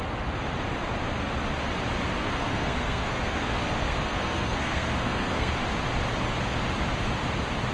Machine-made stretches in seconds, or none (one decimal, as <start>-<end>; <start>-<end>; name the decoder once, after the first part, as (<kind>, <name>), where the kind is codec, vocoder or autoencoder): 2.2-5.5 (codec, SNAC)